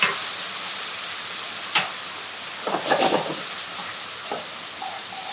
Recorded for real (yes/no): yes